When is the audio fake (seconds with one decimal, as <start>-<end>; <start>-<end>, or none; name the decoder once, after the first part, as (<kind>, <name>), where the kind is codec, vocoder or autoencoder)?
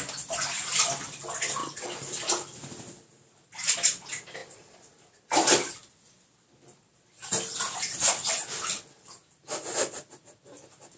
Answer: none